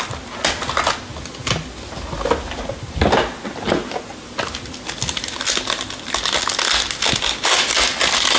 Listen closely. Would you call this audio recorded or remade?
recorded